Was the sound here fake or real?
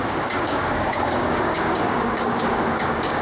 fake